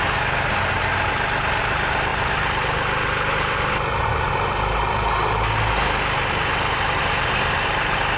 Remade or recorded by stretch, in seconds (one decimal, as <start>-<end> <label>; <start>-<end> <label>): 0.0-8.2 recorded

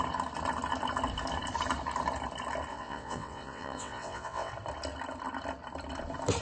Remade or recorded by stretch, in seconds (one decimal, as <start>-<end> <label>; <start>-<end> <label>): 0.0-2.7 recorded; 2.7-4.5 remade; 4.5-6.4 recorded

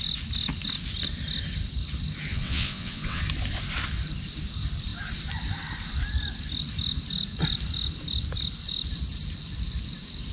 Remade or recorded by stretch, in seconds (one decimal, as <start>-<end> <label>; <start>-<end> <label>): 0.0-2.3 recorded; 2.3-3.2 remade; 3.2-10.3 recorded